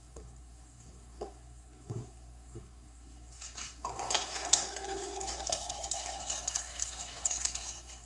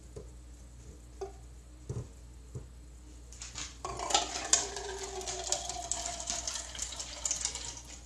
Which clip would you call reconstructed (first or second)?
first